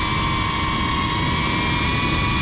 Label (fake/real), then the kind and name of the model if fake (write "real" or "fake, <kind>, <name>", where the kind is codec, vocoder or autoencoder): real